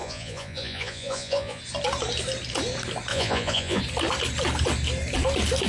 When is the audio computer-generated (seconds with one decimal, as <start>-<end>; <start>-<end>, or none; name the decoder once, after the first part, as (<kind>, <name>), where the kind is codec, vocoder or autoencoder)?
0.0-1.6 (vocoder, Vocos); 3.1-3.8